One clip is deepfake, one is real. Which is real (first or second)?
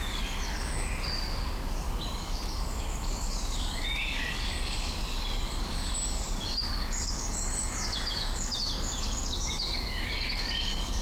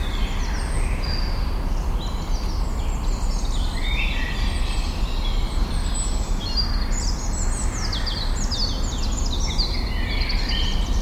second